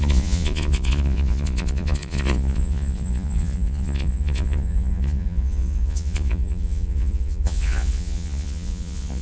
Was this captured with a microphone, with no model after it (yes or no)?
no